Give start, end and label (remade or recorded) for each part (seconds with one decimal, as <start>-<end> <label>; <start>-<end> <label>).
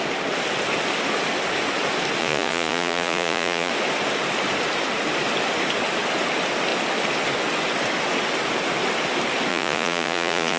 0.0-2.2 recorded; 2.2-3.7 remade; 3.7-9.5 recorded; 9.5-10.6 remade